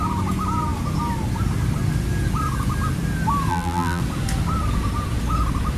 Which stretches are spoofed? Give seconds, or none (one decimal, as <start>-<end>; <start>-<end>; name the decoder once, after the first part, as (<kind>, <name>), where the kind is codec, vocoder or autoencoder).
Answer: 3.5-4.0 (vocoder, BigVGAN v2)